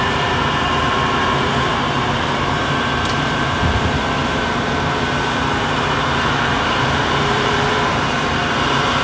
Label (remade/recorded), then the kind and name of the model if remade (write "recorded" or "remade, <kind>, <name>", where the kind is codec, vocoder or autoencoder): remade, vocoder, BigVGAN v2